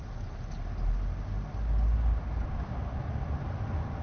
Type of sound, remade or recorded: recorded